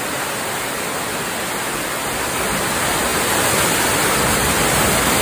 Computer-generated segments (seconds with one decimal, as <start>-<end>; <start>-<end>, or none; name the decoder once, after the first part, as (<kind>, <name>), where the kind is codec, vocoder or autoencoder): none